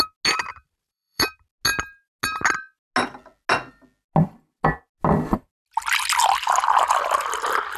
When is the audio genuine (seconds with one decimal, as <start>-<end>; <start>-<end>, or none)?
0.0-0.5; 1.2-7.8